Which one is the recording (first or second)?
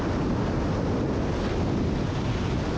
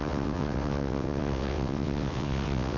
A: first